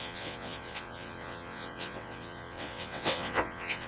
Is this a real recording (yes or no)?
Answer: no